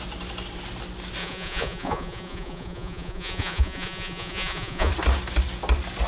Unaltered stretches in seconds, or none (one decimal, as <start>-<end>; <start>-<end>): 0.0-1.2; 4.9-6.1